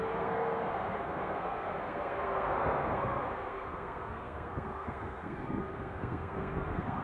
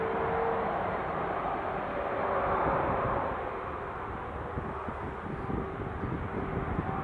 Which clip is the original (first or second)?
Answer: second